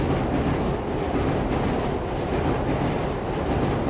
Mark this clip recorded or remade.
recorded